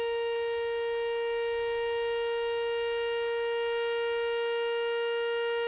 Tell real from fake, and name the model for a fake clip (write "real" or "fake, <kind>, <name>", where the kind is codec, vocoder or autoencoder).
real